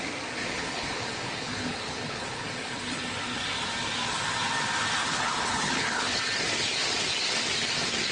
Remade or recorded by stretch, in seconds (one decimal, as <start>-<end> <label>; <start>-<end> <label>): 0.0-0.4 recorded; 0.4-3.0 remade; 3.0-5.0 recorded; 5.0-6.2 remade; 6.2-8.1 recorded